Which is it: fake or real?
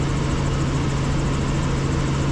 real